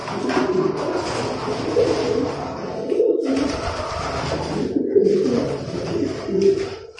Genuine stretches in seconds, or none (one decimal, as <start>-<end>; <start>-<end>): 0.0-5.0; 6.0-7.0